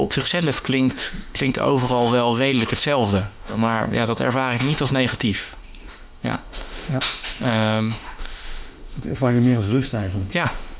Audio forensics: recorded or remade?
remade